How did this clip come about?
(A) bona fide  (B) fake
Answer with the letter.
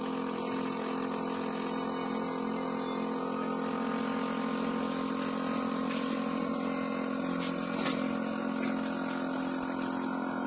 A